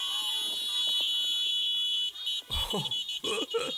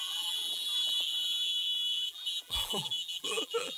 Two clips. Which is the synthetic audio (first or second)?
second